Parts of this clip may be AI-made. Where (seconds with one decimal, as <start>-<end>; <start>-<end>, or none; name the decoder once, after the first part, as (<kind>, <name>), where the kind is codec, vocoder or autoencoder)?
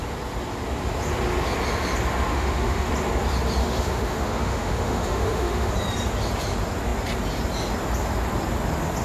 2.3-2.9 (autoencoder, DAC-VAE); 3.6-5.7